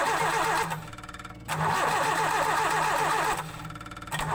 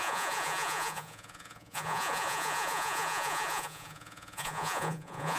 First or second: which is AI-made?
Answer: second